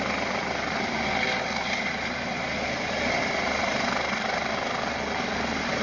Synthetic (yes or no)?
no